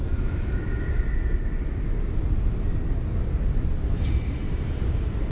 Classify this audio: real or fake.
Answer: real